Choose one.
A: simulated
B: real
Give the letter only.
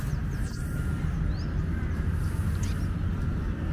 B